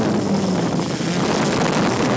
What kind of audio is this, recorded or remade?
recorded